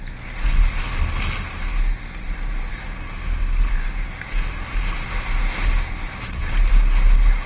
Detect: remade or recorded recorded